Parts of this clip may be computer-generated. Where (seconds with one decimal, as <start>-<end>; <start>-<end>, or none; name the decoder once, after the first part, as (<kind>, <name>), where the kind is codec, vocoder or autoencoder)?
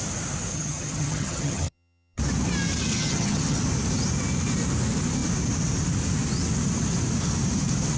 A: 0.5-2.2 (vocoder, HiFi-GAN); 2.9-3.6